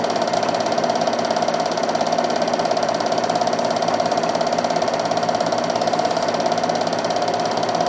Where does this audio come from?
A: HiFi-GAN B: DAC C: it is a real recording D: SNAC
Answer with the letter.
C